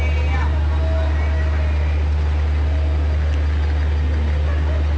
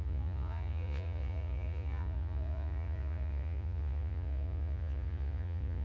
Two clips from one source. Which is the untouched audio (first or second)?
first